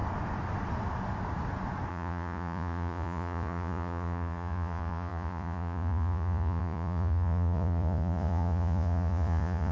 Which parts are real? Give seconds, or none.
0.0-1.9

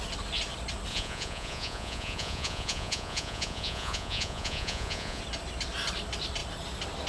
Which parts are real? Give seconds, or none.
0.0-0.9; 5.2-7.1

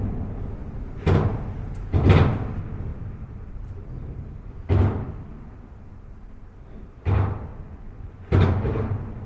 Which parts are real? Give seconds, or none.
0.0-7.5; 8.3-9.3